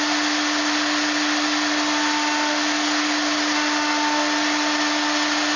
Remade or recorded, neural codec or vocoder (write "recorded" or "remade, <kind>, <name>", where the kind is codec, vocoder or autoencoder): recorded